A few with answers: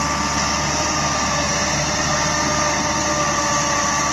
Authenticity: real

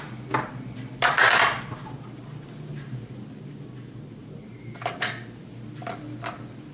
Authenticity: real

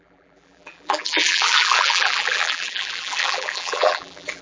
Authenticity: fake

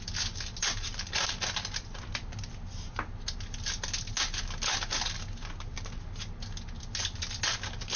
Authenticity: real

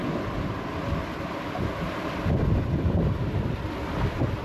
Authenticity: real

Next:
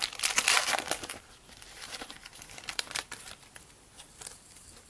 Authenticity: fake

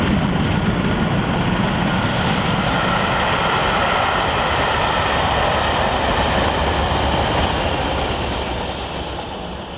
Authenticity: real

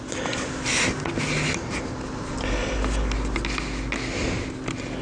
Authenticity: real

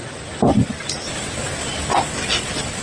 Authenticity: real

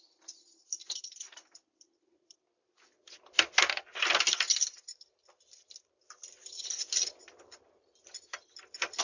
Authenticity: fake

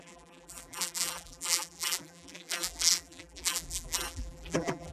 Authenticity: fake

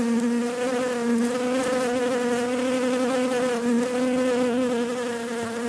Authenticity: real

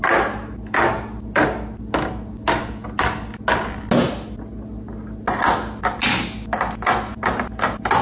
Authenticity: real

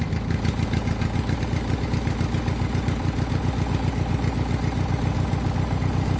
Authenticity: real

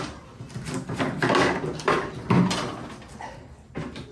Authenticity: real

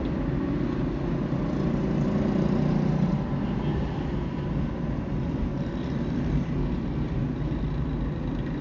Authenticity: real